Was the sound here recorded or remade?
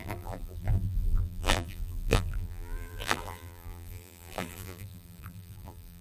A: remade